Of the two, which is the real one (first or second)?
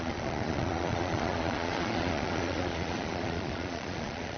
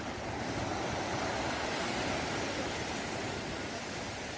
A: second